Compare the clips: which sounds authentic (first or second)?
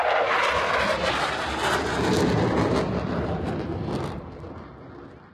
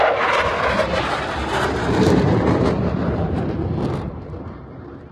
first